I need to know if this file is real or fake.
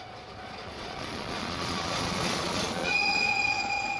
fake